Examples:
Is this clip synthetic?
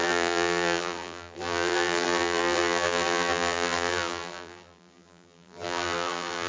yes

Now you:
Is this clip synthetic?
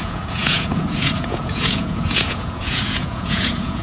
yes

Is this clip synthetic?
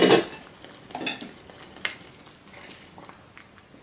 no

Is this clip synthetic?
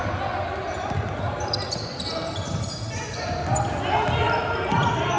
no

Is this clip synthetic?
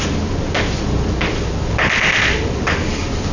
no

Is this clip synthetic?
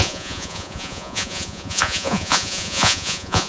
yes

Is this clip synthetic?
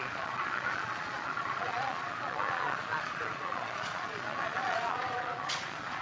yes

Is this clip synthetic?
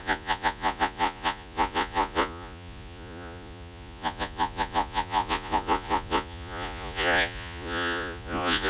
yes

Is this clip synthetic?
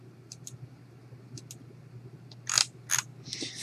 no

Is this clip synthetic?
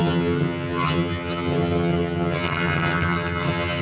yes